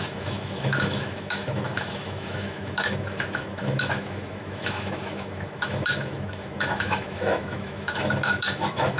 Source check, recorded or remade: remade